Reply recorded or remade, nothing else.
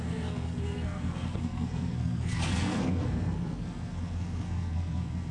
remade